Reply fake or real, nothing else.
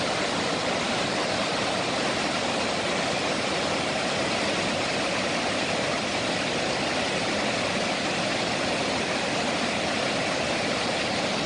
fake